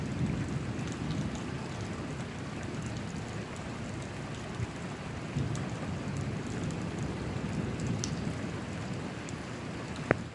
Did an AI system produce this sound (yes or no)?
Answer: no